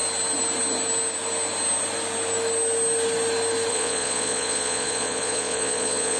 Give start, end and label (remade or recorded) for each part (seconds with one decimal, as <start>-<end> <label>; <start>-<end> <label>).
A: 0.0-3.7 recorded; 3.7-6.2 remade